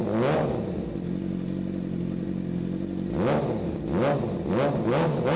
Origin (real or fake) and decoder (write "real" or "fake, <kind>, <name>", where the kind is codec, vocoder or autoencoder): real